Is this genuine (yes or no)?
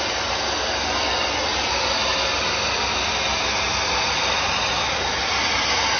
yes